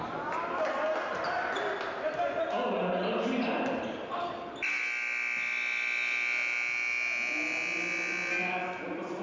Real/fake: real